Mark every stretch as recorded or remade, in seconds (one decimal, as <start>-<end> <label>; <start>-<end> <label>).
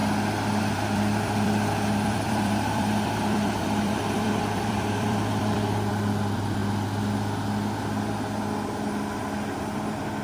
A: 0.0-0.6 recorded; 0.6-6.6 remade; 6.6-9.6 recorded; 9.6-10.2 remade